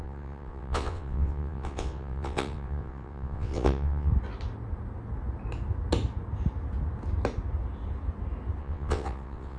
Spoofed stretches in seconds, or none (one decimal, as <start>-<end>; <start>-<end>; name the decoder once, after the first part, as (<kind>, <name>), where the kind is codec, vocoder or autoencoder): 0.0-4.1 (vocoder, WaveNeXt); 8.6-9.6